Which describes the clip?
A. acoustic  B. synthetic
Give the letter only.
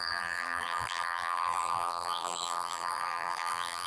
B